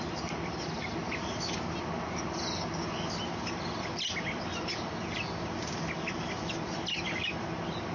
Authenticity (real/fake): real